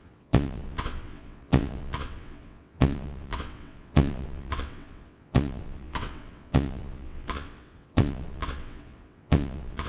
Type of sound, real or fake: fake